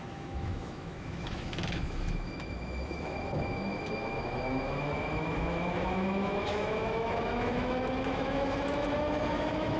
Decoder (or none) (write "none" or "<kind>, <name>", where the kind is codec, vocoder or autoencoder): autoencoder, DAC-VAE